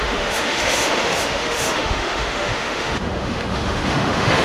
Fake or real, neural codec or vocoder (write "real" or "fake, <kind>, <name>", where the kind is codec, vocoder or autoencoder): fake, autoencoder, DAC-VAE